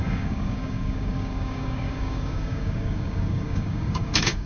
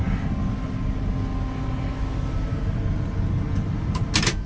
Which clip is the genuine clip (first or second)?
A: second